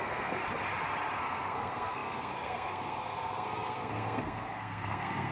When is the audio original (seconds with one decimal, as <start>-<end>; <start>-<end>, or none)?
0.4-1.2